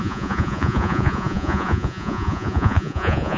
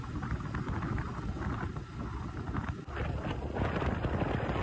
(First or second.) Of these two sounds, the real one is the second